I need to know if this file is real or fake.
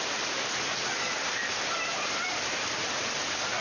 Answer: fake